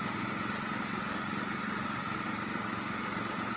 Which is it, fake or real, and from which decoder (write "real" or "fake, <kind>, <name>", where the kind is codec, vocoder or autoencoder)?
real